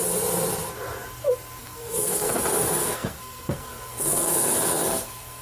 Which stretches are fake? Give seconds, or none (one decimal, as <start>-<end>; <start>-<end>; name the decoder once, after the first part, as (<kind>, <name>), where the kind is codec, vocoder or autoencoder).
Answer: 1.6-2.4 (codec, SNAC); 2.8-5.4